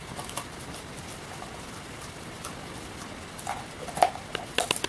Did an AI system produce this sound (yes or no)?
no